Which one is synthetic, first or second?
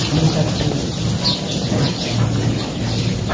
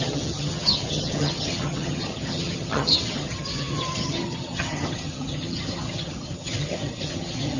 second